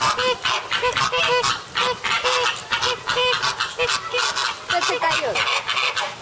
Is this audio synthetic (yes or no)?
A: no